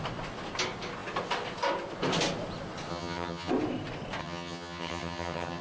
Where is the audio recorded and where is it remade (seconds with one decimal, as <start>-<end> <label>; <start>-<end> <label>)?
0.0-2.9 recorded; 2.9-3.5 remade; 3.5-4.2 recorded; 4.2-5.6 remade